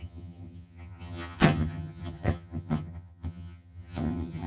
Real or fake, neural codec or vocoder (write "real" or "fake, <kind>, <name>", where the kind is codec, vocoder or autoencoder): fake, vocoder, HiFi-GAN